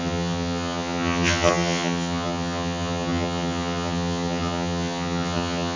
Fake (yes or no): yes